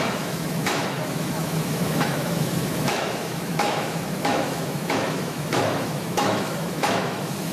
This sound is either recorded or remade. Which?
remade